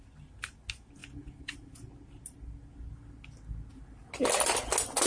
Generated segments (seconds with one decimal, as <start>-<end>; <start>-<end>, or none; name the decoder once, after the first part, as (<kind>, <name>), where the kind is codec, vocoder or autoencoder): none